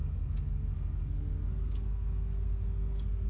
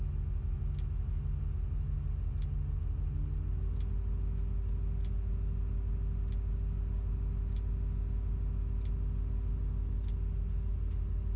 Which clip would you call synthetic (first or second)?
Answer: first